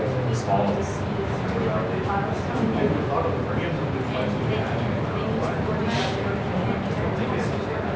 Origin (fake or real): real